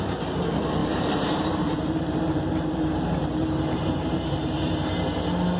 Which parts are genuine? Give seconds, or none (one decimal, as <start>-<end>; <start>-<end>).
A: 0.0-0.8; 4.2-5.6